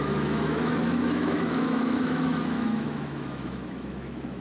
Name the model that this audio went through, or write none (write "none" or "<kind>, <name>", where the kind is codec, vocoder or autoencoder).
autoencoder, DAC-VAE